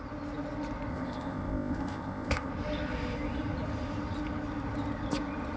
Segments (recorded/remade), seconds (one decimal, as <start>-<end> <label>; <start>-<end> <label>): 0.0-0.9 recorded; 0.9-2.5 remade; 2.5-5.6 recorded